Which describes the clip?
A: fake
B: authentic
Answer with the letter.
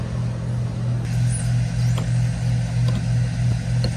B